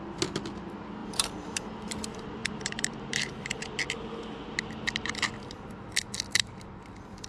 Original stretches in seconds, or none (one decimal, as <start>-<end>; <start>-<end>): 0.0-1.0; 2.0-2.4; 3.7-7.3